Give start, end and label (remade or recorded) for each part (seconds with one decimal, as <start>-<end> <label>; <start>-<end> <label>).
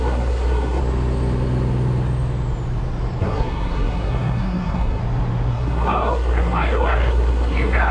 0.0-0.8 remade; 0.8-3.2 recorded; 3.2-5.0 remade; 5.0-5.5 recorded; 5.5-7.9 remade